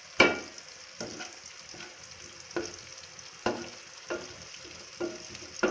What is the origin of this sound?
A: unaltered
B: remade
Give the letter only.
A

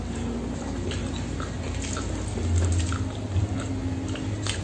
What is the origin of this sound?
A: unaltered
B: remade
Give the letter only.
A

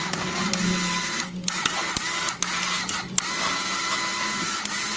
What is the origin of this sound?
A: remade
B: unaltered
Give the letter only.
B